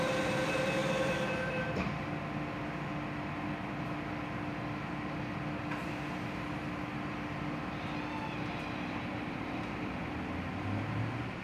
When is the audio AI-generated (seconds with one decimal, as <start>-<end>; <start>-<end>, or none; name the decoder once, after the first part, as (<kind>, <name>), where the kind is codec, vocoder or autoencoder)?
none